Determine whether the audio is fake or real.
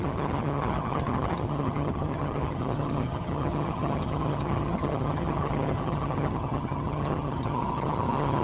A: fake